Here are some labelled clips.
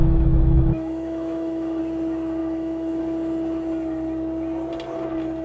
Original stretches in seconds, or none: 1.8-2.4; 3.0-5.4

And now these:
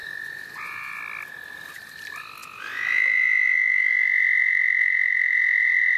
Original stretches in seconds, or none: 1.0-2.4